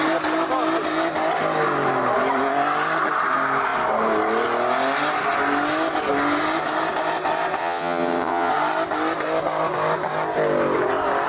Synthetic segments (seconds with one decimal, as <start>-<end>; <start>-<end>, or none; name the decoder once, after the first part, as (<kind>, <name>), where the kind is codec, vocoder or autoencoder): 7.6-8.5 (vocoder, WaveNeXt)